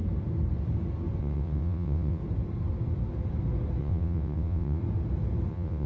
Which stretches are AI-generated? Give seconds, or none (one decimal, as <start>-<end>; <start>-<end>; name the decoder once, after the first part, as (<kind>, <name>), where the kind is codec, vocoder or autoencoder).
1.2-2.2 (vocoder, WaveNeXt); 3.8-4.8; 5.5-5.9